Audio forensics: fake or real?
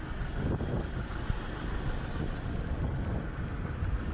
real